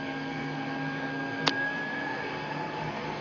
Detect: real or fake fake